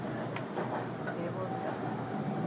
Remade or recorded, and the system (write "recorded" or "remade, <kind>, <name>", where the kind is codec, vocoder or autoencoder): recorded